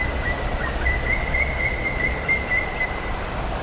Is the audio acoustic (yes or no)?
yes